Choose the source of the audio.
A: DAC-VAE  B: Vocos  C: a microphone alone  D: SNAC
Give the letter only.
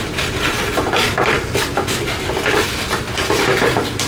C